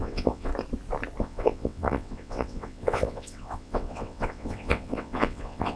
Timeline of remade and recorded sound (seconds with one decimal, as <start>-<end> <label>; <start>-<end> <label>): 0.0-0.5 remade; 0.5-1.2 recorded; 1.2-5.8 remade